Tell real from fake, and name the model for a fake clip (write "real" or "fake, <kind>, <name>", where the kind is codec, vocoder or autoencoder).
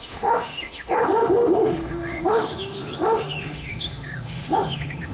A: fake, autoencoder, DAC-VAE